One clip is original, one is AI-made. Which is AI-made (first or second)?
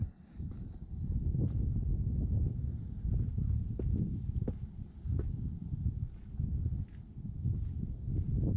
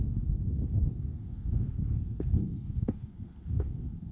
second